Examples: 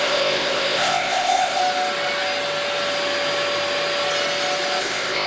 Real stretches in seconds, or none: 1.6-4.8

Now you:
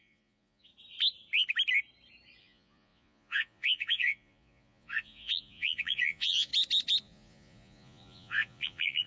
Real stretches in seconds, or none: 0.7-2.4; 6.5-7.0

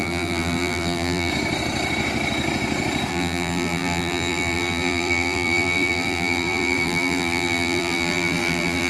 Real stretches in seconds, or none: 1.3-3.1

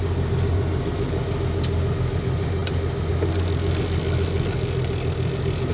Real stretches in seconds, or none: 0.0-5.7

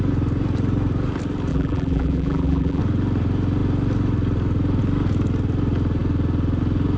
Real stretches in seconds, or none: 0.0-1.5; 2.8-7.0

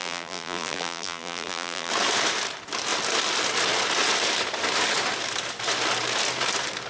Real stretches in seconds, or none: 1.9-6.9